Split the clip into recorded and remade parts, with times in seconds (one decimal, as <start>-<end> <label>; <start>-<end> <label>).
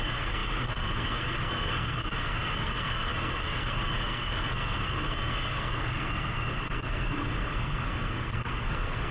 0.0-9.1 remade